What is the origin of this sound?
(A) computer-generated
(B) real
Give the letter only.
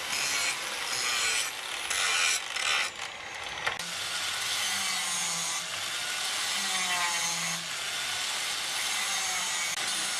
B